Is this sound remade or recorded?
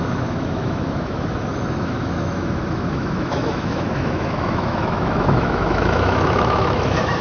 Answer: remade